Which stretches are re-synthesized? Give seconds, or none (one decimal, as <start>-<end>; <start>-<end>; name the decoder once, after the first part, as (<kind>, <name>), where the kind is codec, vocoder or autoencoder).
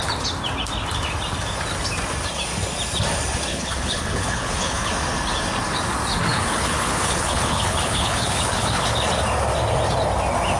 3.5-4.9 (codec, HILCodec); 6.3-9.1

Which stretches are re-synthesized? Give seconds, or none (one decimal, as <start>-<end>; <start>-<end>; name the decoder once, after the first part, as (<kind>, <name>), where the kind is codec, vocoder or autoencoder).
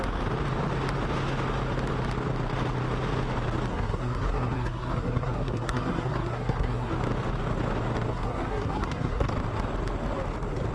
3.7-6.9 (codec, SNAC); 8.1-9.3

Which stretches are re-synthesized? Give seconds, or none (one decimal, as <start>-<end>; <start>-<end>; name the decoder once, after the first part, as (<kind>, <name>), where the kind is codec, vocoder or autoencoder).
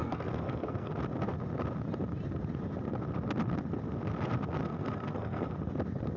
0.0-0.9 (codec, SNAC); 4.6-5.5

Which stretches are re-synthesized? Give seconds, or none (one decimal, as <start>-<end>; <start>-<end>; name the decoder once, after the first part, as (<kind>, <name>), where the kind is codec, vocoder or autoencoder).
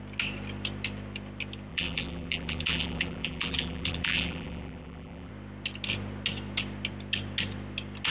1.7-5.3 (vocoder, BigVGAN v2)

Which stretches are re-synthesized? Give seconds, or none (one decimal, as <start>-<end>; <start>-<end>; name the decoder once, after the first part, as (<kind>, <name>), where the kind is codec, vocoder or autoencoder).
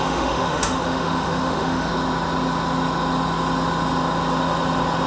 0.0-1.9 (autoencoder, DAC-VAE)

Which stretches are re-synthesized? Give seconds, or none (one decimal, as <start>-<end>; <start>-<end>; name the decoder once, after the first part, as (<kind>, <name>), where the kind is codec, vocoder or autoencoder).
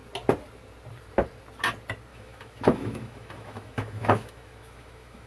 2.1-5.3 (autoencoder, DAC-VAE)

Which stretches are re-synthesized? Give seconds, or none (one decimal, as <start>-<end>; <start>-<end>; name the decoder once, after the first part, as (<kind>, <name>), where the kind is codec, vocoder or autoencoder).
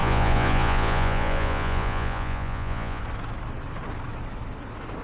0.0-3.0 (vocoder, Vocos)